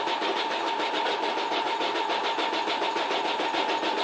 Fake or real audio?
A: real